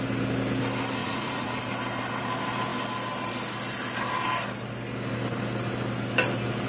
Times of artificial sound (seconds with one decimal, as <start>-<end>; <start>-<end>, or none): 1.0-1.6